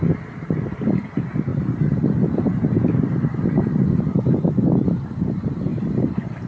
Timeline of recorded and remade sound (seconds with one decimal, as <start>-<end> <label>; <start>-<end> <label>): 0.0-1.5 remade; 1.5-3.5 recorded; 3.5-5.7 remade; 5.7-6.5 recorded